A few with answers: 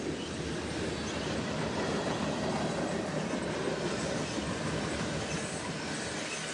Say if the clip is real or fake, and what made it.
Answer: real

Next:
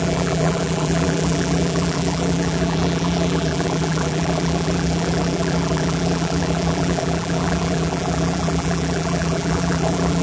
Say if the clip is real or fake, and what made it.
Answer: fake, vocoder, BigVGAN v2